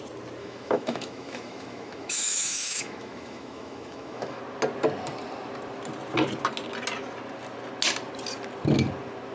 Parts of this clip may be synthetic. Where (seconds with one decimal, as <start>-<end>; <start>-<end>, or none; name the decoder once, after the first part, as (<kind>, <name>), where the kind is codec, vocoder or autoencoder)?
0.4-4.4 (autoencoder, DAC-VAE)